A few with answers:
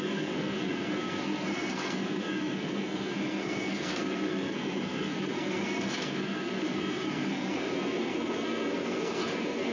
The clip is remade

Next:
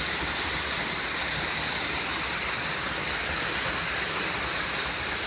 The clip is recorded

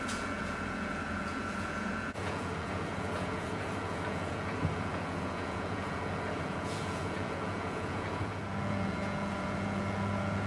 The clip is remade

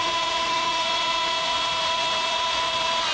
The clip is remade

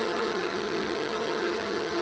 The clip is remade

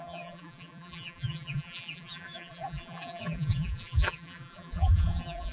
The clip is remade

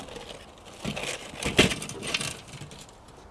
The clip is recorded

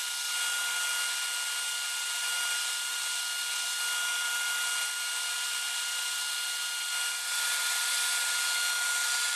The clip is recorded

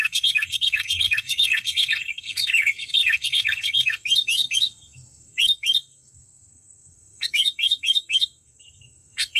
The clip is remade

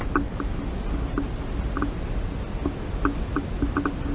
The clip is recorded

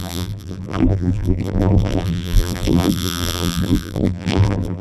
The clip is remade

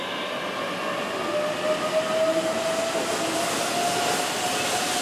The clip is recorded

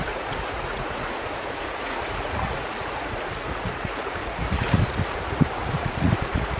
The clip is remade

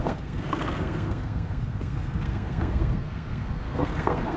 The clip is remade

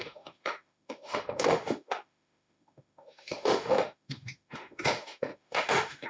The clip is remade